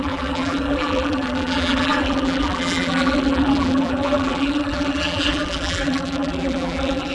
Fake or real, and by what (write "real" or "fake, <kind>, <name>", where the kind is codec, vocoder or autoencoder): fake, vocoder, BigVGAN v2